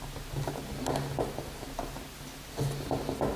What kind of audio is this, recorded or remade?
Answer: recorded